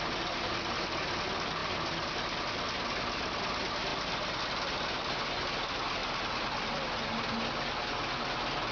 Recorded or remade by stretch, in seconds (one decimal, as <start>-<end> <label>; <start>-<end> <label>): 0.0-3.9 recorded; 3.9-4.4 remade; 4.4-8.7 recorded

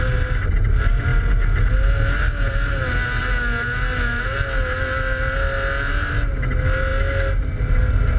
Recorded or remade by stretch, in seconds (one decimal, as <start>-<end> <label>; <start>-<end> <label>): 0.0-8.2 recorded

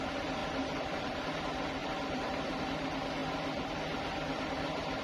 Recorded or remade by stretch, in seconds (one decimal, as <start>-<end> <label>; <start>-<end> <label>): 0.0-0.4 recorded; 0.4-1.2 remade; 1.2-1.8 recorded; 1.8-2.5 remade; 2.5-5.0 recorded

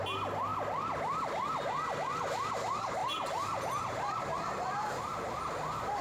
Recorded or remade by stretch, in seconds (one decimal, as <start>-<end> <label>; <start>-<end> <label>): 0.0-3.0 recorded; 3.0-4.3 remade; 4.3-6.0 recorded

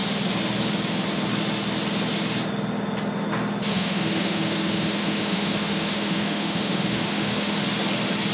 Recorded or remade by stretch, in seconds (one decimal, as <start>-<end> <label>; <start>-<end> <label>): 0.0-3.7 recorded; 3.7-7.6 remade; 7.6-8.3 recorded

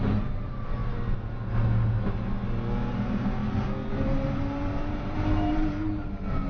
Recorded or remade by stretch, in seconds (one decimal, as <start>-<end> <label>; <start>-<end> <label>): 0.0-0.8 remade; 0.8-2.9 recorded; 2.9-3.4 remade; 3.4-3.9 recorded; 3.9-6.5 remade

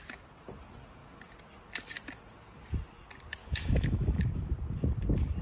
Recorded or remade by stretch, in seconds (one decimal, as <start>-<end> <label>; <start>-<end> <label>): 0.0-3.4 recorded; 3.4-4.2 remade; 4.2-5.4 recorded